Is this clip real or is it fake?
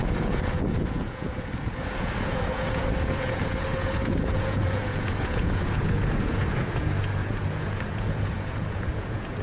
fake